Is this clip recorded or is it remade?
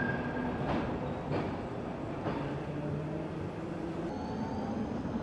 recorded